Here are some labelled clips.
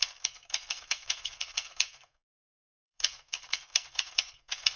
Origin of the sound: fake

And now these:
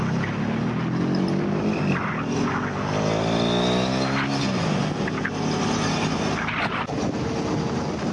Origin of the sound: real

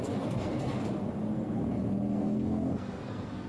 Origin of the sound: fake